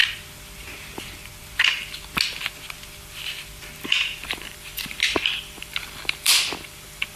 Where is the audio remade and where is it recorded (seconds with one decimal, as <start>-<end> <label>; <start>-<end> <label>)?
0.0-4.2 recorded; 4.2-7.2 remade